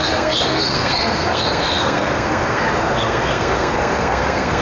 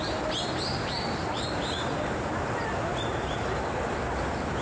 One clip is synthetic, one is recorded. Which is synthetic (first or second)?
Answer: first